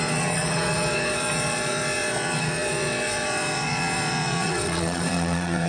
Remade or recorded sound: remade